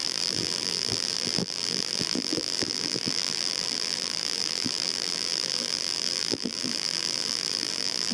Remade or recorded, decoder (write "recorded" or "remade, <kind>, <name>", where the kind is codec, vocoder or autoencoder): remade, vocoder, BigVGAN v2